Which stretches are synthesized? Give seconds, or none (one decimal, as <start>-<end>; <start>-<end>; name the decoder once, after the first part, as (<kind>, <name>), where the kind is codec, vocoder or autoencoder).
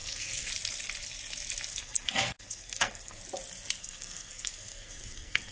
0.0-0.5 (codec, SNAC); 1.7-3.2; 3.8-5.5